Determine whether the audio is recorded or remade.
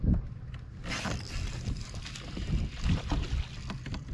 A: remade